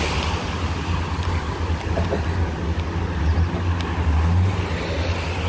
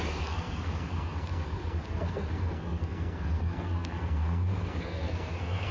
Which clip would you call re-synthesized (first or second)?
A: second